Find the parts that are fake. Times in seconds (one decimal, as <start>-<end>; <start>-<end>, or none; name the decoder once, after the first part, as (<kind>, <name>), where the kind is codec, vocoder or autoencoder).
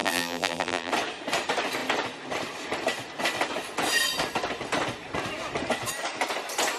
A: 0.0-0.9 (vocoder, BigVGAN v2)